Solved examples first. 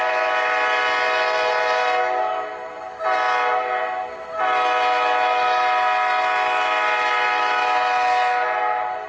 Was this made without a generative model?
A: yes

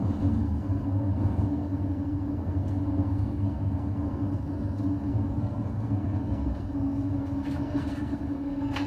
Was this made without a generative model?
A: no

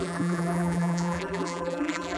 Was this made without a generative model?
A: no